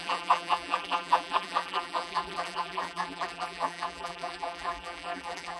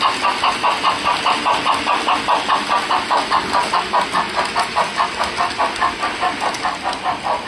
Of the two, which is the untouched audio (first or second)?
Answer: second